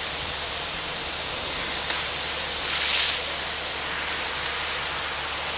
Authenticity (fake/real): real